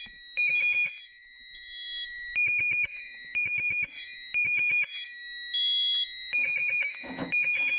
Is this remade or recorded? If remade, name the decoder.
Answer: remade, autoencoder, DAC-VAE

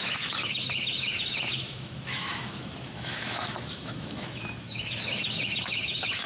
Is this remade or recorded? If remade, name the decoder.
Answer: remade, autoencoder, DAC-VAE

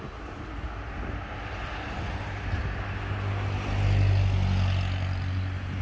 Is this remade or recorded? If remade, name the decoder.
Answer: recorded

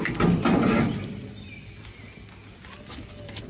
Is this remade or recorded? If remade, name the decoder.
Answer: recorded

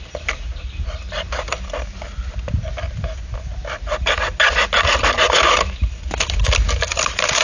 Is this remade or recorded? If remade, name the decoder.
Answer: recorded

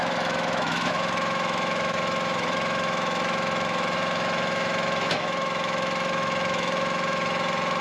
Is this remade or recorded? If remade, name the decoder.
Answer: remade, autoencoder, DAC-VAE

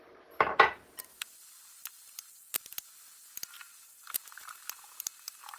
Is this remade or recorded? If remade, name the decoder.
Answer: recorded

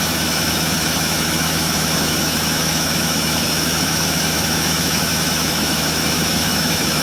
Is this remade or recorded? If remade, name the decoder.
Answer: remade, autoencoder, DAC-VAE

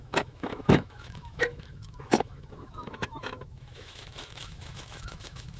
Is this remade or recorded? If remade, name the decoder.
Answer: remade, autoencoder, DAC-VAE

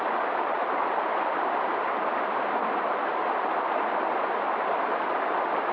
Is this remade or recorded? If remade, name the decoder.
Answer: recorded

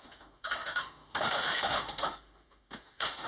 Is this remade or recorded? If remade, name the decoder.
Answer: remade, autoencoder, DAC-VAE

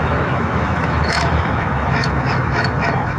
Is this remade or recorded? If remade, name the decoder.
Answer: remade, autoencoder, DAC-VAE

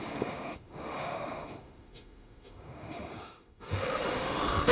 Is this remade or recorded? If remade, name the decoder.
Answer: remade, autoencoder, DAC-VAE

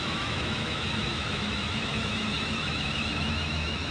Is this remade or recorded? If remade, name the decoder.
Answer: remade, autoencoder, DAC-VAE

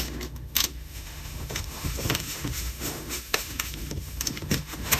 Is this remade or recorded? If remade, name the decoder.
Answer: remade, autoencoder, DAC-VAE